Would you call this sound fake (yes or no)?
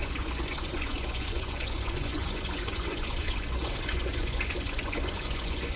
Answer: yes